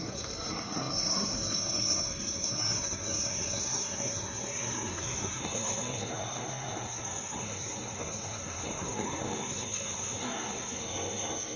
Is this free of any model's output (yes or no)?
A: no